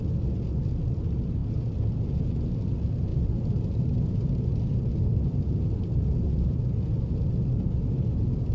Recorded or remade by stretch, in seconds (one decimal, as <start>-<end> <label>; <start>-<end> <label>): 0.0-8.5 recorded